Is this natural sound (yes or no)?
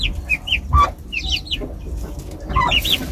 yes